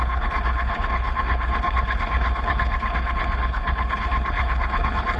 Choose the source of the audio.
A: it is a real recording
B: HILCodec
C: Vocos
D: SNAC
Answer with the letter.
B